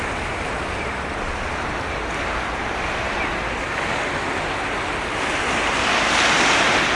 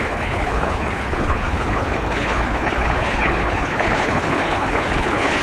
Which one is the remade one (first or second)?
second